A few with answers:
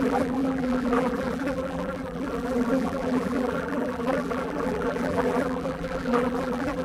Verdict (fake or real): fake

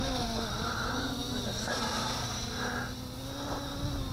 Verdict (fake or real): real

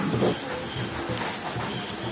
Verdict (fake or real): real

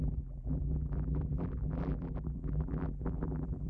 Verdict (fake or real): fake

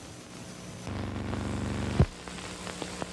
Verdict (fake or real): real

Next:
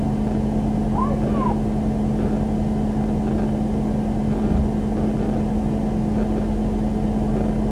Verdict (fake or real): real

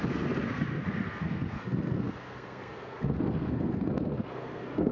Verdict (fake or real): fake